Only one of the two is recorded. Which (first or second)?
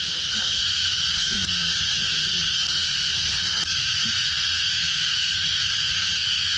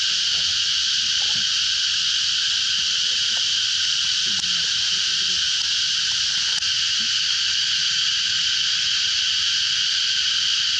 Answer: second